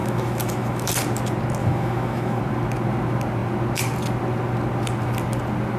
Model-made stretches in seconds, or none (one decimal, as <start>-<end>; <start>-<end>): 0.0-0.9; 1.6-2.4